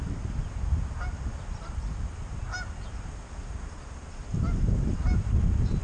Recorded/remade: recorded